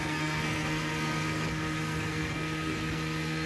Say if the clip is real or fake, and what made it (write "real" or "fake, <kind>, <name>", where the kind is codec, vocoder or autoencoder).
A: fake, codec, SNAC